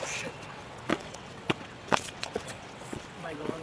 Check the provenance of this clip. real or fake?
fake